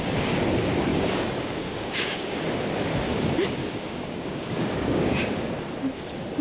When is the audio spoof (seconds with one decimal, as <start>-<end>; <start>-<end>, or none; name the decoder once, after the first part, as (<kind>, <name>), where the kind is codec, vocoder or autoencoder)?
0.9-2.4 (codec, DAC); 3.6-5.5